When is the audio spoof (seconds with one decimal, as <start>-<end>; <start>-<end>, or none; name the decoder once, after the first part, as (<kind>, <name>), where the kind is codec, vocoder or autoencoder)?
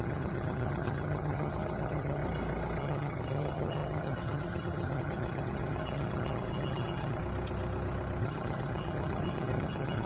0.0-2.2 (vocoder, HiFi-GAN); 2.8-7.2; 8.2-10.1